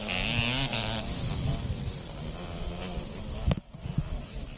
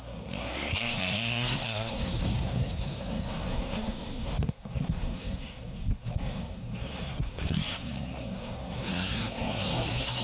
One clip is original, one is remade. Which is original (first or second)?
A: first